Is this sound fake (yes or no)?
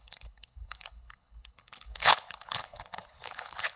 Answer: yes